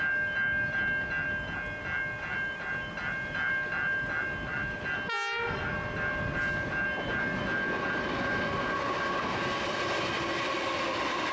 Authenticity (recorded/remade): recorded